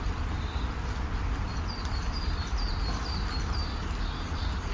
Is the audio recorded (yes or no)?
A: yes